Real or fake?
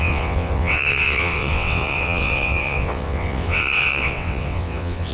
fake